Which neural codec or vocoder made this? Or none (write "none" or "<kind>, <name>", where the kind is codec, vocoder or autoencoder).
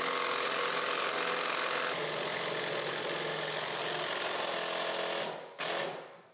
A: none